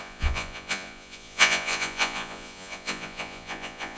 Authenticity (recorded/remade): remade